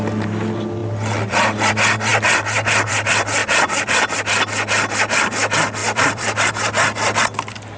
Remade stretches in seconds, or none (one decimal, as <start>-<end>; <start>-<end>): 0.8-1.7; 3.4-4.2; 5.8-6.5

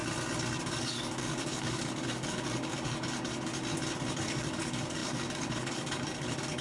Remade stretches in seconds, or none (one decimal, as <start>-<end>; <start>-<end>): 0.6-3.5; 4.1-6.6